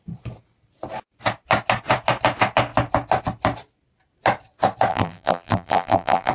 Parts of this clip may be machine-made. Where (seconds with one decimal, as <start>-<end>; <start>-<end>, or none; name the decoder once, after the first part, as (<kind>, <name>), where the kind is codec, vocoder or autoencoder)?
4.9-6.3 (vocoder, BigVGAN v2)